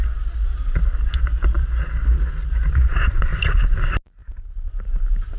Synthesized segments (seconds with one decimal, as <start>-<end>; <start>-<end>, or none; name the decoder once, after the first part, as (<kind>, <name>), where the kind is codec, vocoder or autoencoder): none

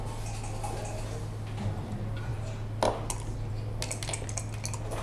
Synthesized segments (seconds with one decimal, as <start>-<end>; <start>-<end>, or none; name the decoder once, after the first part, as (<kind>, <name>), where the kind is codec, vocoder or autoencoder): none